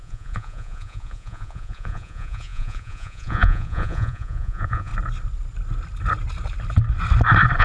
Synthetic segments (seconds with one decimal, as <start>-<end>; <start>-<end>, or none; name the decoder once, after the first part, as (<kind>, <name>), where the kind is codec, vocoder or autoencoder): 0.0-4.9 (vocoder, Vocos)